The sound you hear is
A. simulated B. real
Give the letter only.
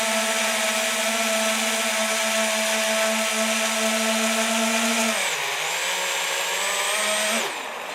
B